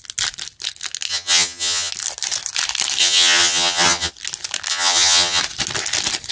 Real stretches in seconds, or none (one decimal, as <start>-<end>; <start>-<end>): 0.0-1.1; 1.9-3.0; 4.1-4.7; 5.4-6.3